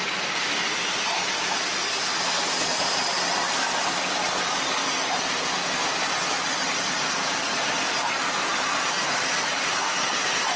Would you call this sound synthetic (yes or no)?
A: no